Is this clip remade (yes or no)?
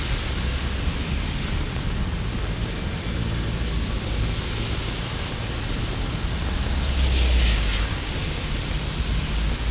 no